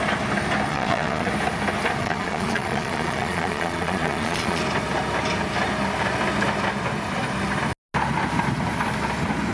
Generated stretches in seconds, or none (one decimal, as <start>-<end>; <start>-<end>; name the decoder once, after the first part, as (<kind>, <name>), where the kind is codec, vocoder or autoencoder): 0.7-1.3 (vocoder, Vocos); 2.0-4.6